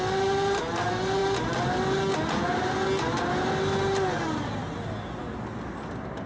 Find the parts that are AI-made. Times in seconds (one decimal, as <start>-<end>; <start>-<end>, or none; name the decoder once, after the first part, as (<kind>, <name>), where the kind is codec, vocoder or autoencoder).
none